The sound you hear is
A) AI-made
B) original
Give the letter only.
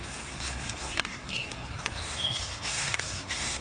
A